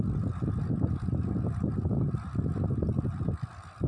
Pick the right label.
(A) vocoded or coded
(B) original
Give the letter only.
B